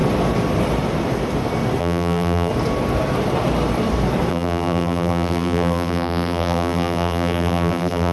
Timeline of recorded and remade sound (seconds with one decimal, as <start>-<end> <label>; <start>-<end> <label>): 0.0-1.8 recorded; 1.8-2.5 remade; 2.5-4.3 recorded; 4.3-8.1 remade